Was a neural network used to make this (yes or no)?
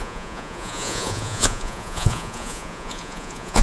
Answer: yes